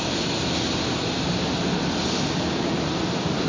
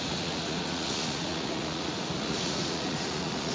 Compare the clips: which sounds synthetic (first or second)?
second